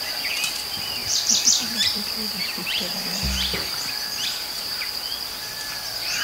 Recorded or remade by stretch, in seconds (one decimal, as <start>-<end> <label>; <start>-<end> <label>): 0.0-6.2 remade